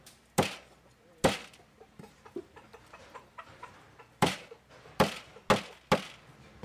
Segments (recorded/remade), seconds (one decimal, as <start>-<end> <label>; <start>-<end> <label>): 0.0-1.4 recorded; 1.4-5.4 remade; 5.4-6.6 recorded